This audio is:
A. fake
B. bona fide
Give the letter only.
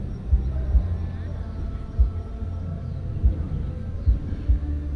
B